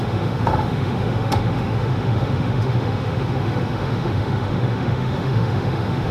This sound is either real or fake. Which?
fake